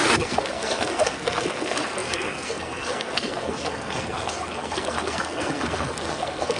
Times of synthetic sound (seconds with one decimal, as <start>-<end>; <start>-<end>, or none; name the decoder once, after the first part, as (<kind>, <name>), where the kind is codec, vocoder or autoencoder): 0.0-6.6 (codec, SNAC)